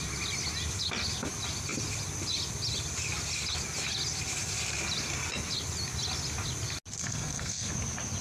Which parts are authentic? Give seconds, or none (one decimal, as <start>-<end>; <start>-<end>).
0.0-7.0; 7.7-8.2